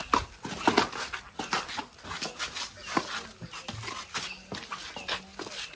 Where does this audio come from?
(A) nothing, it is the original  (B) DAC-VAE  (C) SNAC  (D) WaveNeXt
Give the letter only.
A